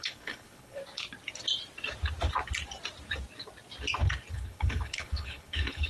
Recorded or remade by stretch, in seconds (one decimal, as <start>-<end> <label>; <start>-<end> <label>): 0.0-0.8 remade; 0.8-4.3 recorded; 4.3-5.9 remade